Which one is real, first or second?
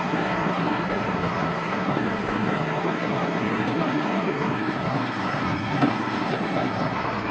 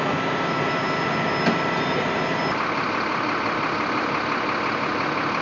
second